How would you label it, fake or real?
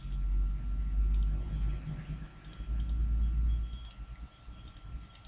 real